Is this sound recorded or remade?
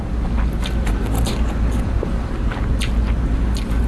recorded